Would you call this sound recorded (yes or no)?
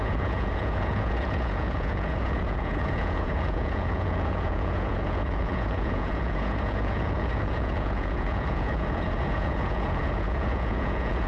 no